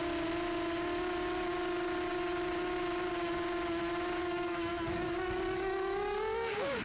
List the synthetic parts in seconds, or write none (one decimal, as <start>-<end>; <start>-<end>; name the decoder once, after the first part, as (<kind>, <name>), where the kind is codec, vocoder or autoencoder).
4.2-6.8 (codec, DAC)